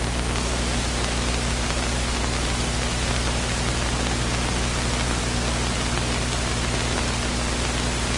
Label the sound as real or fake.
real